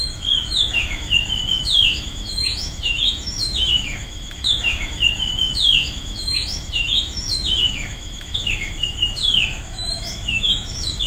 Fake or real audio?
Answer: fake